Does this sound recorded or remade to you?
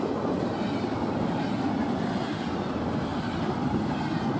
recorded